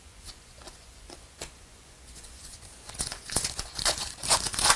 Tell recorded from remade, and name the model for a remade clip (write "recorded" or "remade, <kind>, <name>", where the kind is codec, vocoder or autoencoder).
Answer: remade, vocoder, Vocos